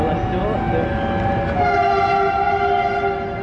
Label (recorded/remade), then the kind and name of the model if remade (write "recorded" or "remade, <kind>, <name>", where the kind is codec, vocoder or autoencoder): recorded